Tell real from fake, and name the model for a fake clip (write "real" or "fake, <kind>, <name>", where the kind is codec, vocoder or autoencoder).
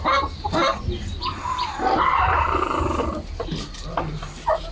real